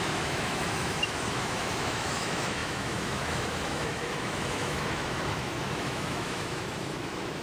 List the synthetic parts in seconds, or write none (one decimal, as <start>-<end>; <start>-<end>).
0.0-7.4